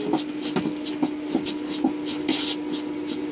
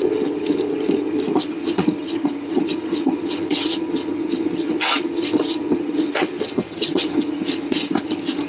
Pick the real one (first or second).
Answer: first